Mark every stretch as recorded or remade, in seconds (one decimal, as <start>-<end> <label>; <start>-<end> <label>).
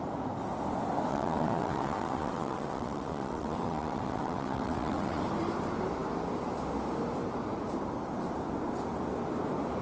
0.0-1.1 recorded; 1.1-5.2 remade; 5.2-9.8 recorded